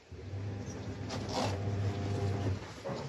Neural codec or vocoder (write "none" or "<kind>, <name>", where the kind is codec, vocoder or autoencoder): none